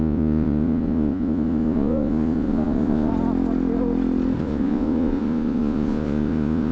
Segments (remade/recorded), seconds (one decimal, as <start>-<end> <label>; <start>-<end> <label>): 0.0-3.1 remade; 3.1-4.4 recorded; 4.4-6.7 remade